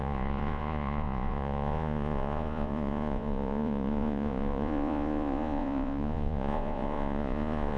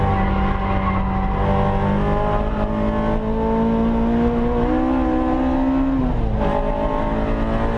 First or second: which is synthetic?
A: first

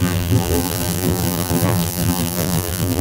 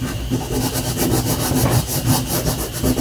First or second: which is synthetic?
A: first